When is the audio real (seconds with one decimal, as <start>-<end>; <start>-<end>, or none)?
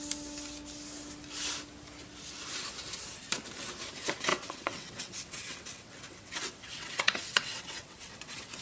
0.0-4.3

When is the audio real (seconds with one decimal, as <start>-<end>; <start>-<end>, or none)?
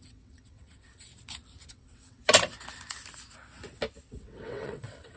1.1-1.7; 2.2-4.1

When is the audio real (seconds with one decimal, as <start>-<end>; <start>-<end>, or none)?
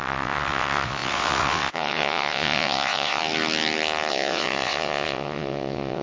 3.2-4.1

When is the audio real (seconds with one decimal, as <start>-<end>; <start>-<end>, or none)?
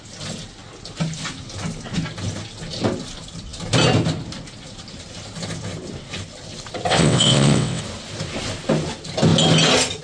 0.0-6.9; 7.8-10.0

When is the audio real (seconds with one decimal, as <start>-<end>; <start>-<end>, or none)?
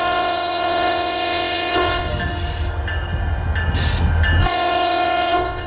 2.1-4.4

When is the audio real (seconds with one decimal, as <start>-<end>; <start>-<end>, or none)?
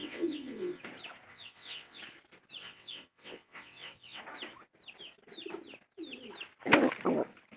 0.8-1.3; 2.0-2.6; 4.2-7.6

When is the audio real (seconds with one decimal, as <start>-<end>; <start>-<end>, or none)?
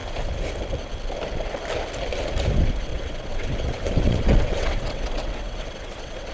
0.0-2.9